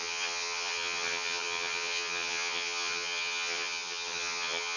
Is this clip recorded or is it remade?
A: remade